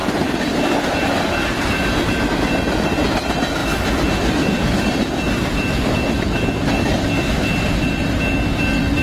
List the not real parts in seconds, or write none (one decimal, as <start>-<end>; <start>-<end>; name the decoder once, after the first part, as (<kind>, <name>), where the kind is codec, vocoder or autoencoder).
0.0-0.6 (vocoder, BigVGAN v2)